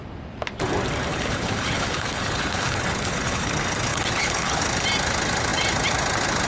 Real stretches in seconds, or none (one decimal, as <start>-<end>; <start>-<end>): 0.0-1.1; 3.5-3.9; 4.6-6.5